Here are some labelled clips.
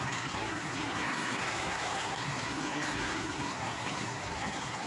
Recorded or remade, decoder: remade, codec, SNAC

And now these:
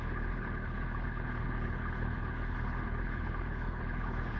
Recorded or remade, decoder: remade, codec, HILCodec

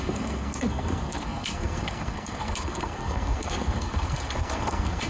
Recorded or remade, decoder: remade, codec, SNAC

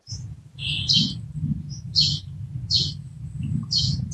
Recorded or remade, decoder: recorded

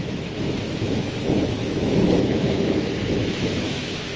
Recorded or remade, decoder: remade, autoencoder, DAC-VAE